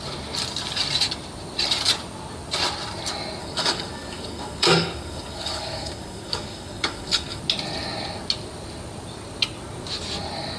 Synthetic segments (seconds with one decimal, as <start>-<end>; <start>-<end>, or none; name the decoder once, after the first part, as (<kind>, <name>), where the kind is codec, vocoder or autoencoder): 3.4-7.4 (codec, DAC)